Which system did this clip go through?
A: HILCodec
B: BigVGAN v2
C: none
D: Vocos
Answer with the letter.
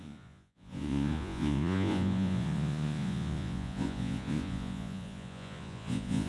D